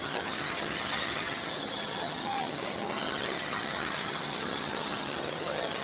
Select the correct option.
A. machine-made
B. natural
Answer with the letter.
A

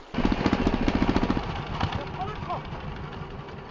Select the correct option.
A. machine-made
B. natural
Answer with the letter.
B